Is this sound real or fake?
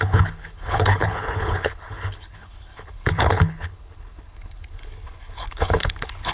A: fake